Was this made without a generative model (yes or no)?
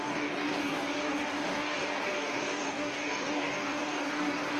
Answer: no